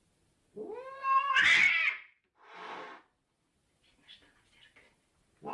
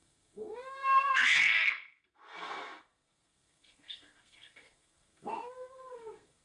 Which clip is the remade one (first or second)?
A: second